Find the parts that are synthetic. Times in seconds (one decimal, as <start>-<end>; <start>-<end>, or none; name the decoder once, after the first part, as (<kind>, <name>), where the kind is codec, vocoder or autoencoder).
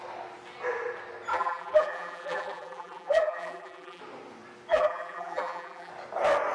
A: 1.3-4.0 (vocoder, BigVGAN v2); 4.7-5.9